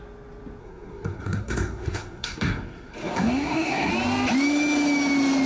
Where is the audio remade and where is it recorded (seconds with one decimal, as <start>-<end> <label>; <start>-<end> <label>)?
0.0-0.6 recorded; 0.6-3.9 remade; 3.9-5.5 recorded